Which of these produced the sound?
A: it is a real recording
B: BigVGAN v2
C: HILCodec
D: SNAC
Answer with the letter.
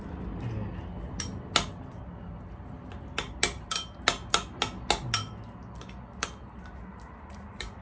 A